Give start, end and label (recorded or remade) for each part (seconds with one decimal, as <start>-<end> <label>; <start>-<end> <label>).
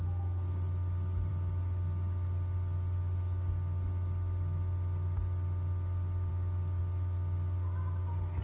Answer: 0.0-8.4 recorded